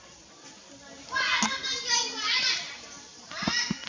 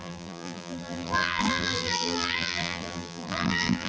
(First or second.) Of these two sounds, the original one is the first